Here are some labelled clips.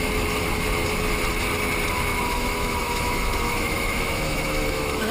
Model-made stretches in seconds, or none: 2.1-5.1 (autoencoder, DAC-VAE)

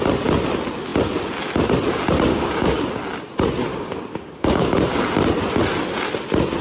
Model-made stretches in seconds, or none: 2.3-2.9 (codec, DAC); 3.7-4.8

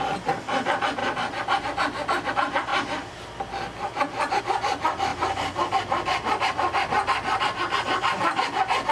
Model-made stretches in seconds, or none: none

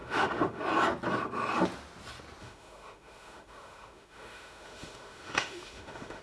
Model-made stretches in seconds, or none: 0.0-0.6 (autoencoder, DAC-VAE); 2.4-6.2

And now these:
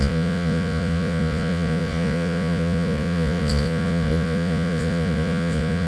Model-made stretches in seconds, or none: 0.0-5.9 (vocoder, Vocos)

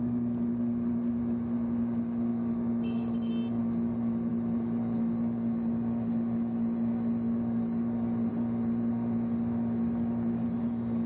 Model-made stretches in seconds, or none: 2.3-3.3 (autoencoder, DAC-VAE)

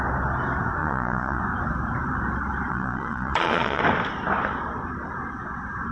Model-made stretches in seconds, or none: 0.8-1.4 (vocoder, Vocos); 2.7-3.8